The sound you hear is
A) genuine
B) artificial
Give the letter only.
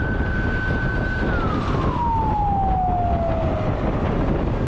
A